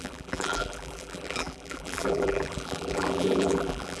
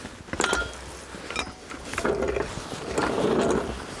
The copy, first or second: first